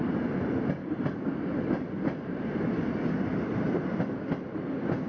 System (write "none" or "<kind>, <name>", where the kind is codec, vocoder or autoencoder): none